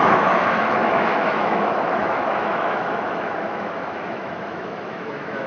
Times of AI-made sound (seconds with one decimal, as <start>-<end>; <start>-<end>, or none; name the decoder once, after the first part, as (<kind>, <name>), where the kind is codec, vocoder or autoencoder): 0.0-5.5 (autoencoder, DAC-VAE)